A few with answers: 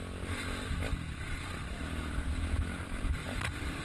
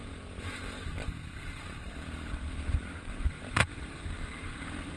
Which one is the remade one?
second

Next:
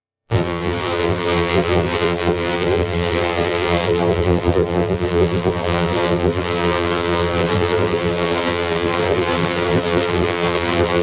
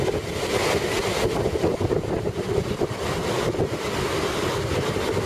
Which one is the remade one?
first